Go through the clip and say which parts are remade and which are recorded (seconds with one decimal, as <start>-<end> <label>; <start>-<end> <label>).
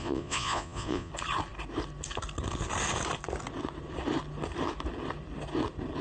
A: 0.0-1.1 remade; 1.1-6.0 recorded